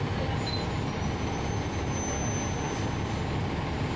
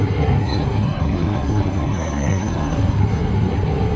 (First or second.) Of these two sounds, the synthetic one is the second